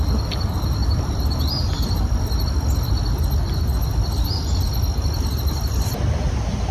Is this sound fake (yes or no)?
no